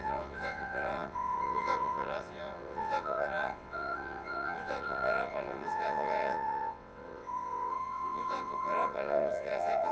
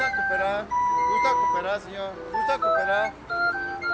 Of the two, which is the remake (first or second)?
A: first